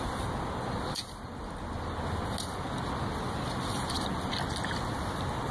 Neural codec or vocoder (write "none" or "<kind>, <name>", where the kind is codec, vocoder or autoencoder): none